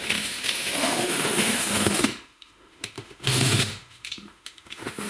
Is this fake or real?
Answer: fake